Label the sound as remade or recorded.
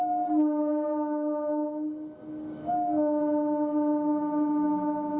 recorded